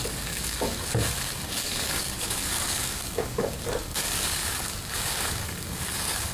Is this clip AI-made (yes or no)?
yes